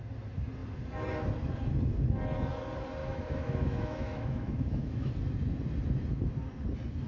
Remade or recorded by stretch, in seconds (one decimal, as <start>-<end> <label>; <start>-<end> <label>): 0.0-3.0 recorded; 3.0-5.1 remade; 5.1-7.1 recorded